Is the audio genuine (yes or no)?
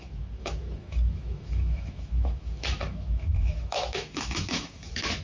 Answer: no